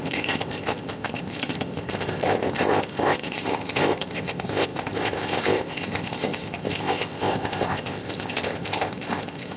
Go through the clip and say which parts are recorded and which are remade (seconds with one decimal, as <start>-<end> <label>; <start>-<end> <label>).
0.0-9.6 remade